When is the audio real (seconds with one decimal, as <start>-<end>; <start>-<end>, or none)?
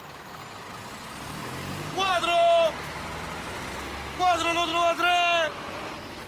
0.4-4.2; 4.7-6.3